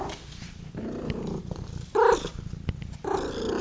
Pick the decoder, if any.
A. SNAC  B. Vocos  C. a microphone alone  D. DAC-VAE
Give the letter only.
C